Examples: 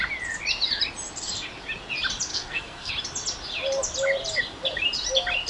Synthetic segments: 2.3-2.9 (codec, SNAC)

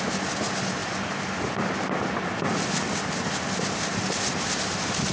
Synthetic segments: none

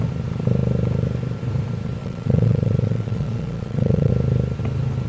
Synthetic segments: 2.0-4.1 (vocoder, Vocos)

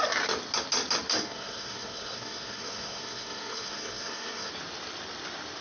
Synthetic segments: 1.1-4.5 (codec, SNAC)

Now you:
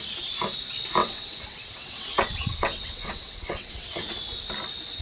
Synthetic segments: 1.0-4.0 (vocoder, WaveNeXt)

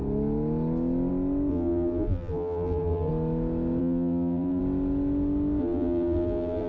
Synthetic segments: 1.5-3.1 (vocoder, BigVGAN v2); 3.8-4.6; 5.6-6.7